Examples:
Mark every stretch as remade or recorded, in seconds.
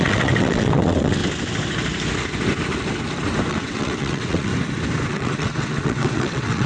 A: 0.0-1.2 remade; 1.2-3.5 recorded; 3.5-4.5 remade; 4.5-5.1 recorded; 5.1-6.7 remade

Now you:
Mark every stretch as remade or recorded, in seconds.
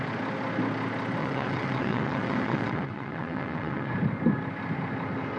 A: 0.0-1.2 recorded; 1.2-3.9 remade; 3.9-5.4 recorded